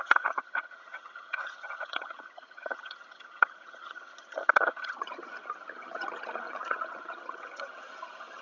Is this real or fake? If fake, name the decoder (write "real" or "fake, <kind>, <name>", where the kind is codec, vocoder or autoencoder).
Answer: fake, vocoder, HiFi-GAN